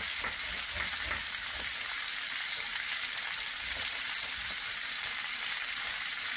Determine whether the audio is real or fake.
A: real